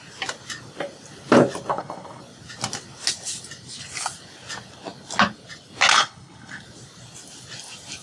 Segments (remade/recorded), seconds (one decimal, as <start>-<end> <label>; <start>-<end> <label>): 0.0-1.7 recorded; 1.7-2.2 remade; 2.2-5.9 recorded; 5.9-6.6 remade; 6.6-8.0 recorded

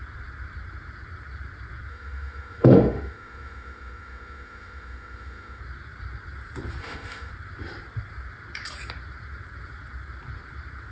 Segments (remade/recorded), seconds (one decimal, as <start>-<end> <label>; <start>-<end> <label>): 0.0-1.9 recorded; 1.9-5.6 remade; 5.6-6.8 recorded; 6.8-7.3 remade; 7.3-10.9 recorded

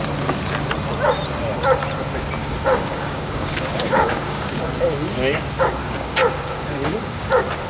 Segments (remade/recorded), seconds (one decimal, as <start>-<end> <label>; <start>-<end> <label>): 0.0-2.4 recorded; 2.4-4.6 remade; 4.6-5.8 recorded; 5.8-7.3 remade; 7.3-7.7 recorded

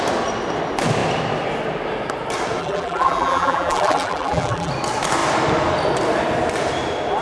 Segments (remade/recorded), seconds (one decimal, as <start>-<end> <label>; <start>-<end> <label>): 0.0-2.6 recorded; 2.6-4.7 remade; 4.7-7.2 recorded

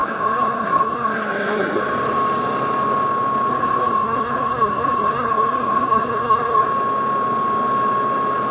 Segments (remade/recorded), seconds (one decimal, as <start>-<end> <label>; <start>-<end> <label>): 0.0-1.8 remade; 1.8-3.5 recorded; 3.5-6.7 remade; 6.7-8.5 recorded

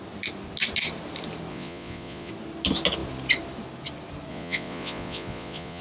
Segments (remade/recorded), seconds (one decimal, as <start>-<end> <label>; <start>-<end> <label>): 0.0-1.5 recorded; 1.5-2.3 remade; 2.3-4.3 recorded; 4.3-5.8 remade

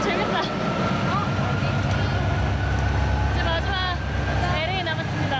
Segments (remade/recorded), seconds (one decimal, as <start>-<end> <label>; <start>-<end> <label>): 0.0-5.4 recorded

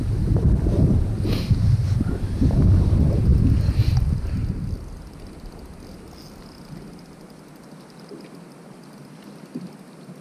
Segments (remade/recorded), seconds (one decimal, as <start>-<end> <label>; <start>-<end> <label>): 0.0-10.2 recorded